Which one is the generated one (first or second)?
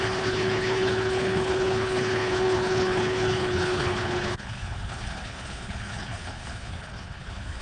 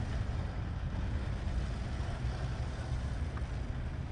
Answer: first